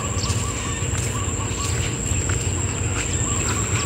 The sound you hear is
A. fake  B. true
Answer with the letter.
B